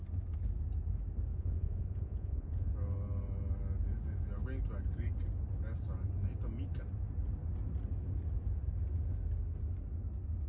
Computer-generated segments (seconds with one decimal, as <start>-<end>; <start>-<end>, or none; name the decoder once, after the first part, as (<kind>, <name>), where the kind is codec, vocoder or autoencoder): 1.3-2.7 (vocoder, Vocos)

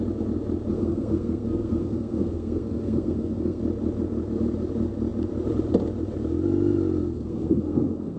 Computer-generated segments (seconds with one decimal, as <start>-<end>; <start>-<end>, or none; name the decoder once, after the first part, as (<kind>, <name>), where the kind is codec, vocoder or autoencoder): 0.7-3.6 (codec, SNAC); 7.0-8.2

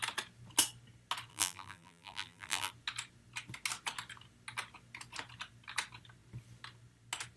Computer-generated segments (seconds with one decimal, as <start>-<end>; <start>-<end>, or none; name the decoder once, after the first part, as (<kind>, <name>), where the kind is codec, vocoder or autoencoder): 1.3-2.7 (vocoder, BigVGAN v2)